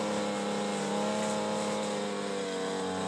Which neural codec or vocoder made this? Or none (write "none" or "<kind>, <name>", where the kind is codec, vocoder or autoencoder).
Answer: none